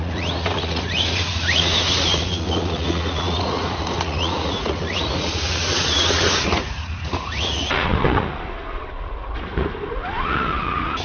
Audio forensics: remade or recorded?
remade